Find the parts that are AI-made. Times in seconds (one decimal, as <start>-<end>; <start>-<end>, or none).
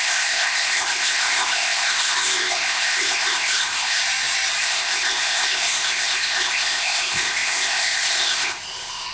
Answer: 0.0-4.0; 4.6-9.1